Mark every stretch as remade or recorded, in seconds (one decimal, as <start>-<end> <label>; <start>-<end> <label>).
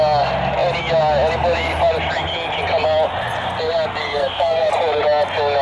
0.0-4.0 recorded; 4.0-4.7 remade; 4.7-5.6 recorded